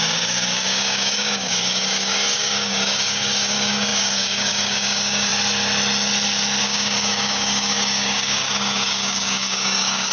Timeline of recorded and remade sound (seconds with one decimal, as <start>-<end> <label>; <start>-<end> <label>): 0.0-5.3 remade; 5.3-6.6 recorded; 6.6-10.1 remade